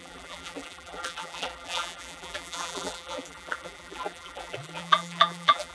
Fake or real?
fake